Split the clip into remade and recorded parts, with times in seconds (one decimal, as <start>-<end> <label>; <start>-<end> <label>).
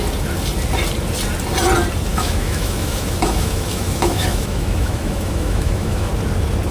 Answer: 0.0-2.1 recorded; 2.1-6.1 remade; 6.1-6.7 recorded